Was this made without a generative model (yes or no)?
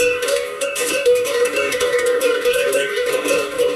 no